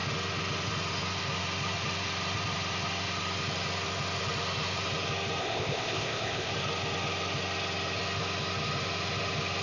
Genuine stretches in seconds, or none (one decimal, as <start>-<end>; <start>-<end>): 0.0-5.4; 6.5-9.6